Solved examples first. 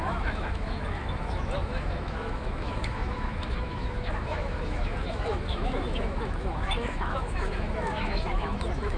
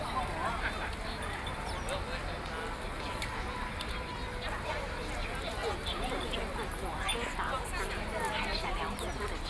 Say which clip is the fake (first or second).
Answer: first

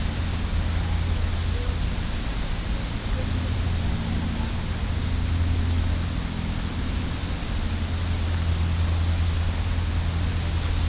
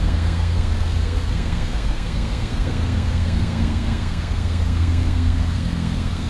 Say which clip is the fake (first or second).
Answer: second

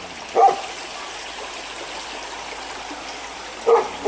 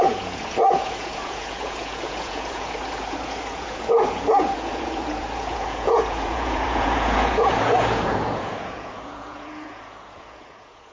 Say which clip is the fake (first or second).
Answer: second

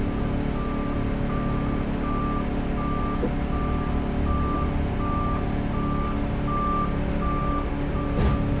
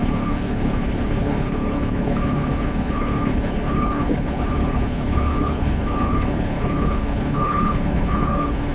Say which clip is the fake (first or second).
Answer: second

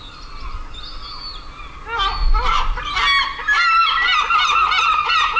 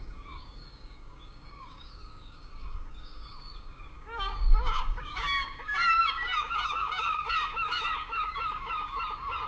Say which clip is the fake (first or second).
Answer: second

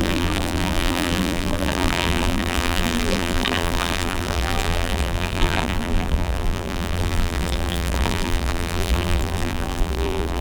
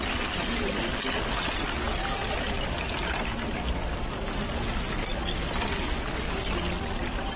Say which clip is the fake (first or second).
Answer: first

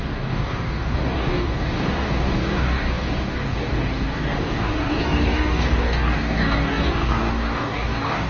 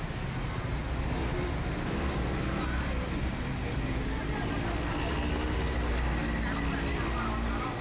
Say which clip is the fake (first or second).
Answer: first